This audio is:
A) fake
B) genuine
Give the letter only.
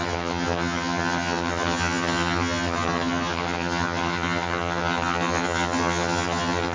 A